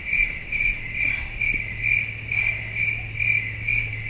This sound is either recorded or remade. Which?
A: recorded